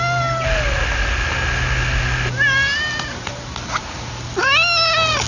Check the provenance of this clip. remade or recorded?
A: recorded